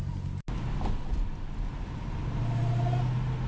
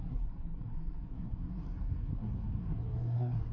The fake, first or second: second